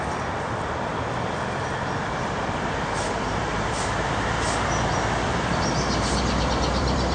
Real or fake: fake